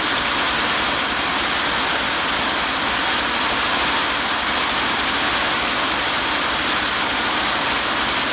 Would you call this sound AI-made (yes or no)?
no